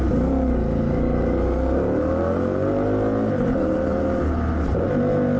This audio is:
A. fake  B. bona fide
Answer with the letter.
B